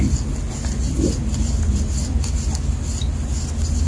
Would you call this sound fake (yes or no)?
no